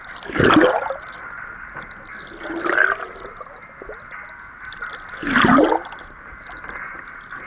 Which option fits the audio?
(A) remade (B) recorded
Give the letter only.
B